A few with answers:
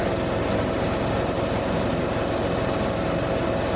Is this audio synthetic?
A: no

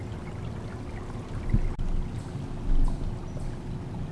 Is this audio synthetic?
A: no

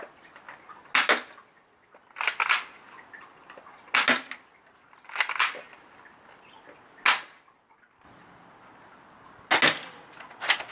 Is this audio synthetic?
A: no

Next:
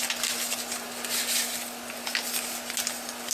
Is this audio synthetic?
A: no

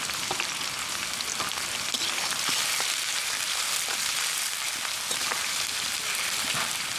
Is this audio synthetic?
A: yes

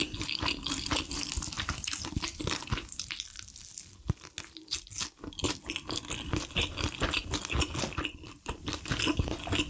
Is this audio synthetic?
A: no